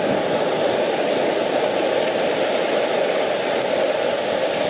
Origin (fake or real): real